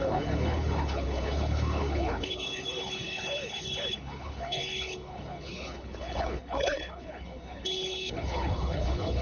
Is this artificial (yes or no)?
yes